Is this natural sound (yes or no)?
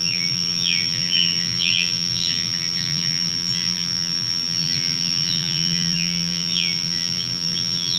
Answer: no